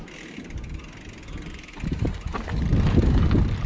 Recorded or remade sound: recorded